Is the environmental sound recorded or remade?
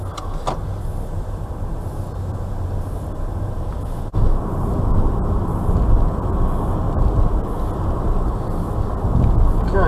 recorded